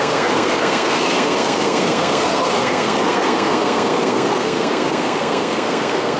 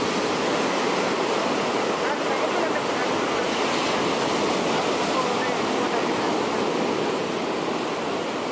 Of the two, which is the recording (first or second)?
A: second